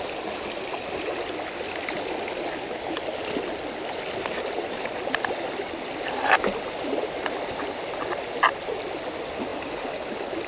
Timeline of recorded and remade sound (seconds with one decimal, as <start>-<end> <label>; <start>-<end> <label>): 0.0-10.5 recorded